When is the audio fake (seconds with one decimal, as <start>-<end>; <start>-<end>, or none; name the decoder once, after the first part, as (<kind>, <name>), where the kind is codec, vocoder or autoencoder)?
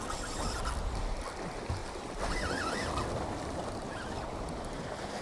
none